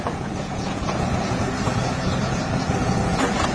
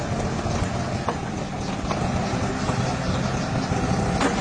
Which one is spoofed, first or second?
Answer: first